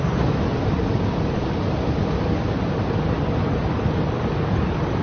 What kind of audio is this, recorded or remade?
recorded